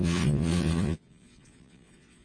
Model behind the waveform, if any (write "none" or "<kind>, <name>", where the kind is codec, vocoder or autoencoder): vocoder, Vocos